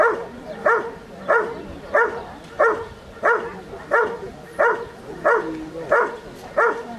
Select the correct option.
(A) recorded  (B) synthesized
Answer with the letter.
A